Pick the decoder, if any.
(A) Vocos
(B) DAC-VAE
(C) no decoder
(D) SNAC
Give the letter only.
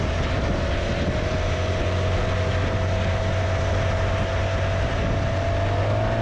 C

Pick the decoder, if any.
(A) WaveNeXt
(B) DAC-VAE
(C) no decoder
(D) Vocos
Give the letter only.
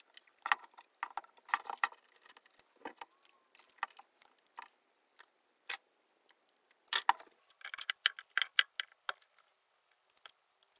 C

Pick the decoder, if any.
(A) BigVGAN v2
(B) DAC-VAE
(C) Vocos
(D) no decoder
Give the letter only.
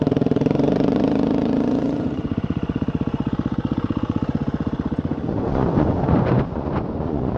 C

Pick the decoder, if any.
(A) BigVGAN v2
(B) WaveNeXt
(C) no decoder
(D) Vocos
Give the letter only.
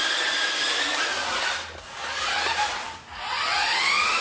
C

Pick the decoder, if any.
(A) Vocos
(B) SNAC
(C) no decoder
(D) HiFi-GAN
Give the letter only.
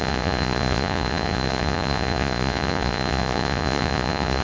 A